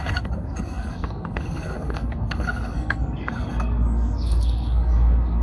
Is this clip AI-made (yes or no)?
yes